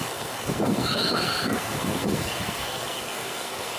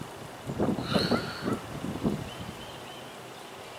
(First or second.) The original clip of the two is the second